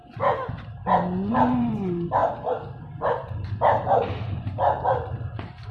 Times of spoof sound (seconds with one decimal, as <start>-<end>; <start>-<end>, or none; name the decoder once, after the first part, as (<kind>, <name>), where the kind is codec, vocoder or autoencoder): 1.3-2.2 (vocoder, BigVGAN v2); 2.9-5.7